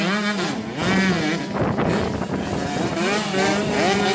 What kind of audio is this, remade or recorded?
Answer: recorded